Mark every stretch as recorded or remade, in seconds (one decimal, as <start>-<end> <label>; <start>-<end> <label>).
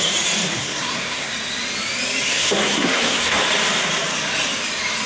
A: 0.0-0.6 recorded; 0.6-1.3 remade; 1.3-2.3 recorded; 2.3-3.4 remade; 3.4-5.1 recorded